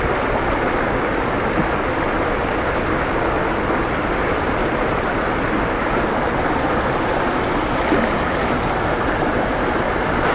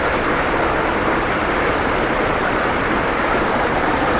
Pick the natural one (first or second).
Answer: first